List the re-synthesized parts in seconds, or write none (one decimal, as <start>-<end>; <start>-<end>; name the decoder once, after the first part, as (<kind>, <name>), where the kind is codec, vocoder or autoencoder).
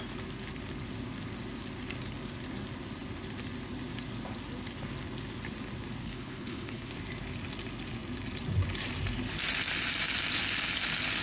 6.0-6.9 (codec, HILCodec)